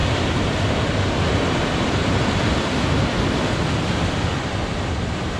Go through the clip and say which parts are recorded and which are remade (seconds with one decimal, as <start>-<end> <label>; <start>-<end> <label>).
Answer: 0.0-5.4 recorded